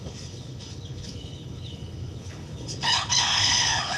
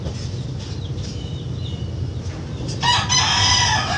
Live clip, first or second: second